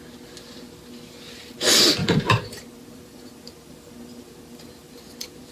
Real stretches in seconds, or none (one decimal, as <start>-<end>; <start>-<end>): 0.0-2.0